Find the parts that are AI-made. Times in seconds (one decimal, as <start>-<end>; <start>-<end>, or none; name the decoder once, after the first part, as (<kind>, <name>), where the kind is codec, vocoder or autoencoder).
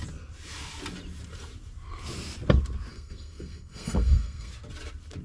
2.9-4.5 (codec, SNAC)